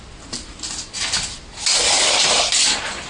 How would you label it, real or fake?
real